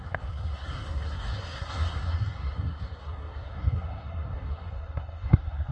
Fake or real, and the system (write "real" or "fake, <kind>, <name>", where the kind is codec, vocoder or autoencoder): fake, codec, SNAC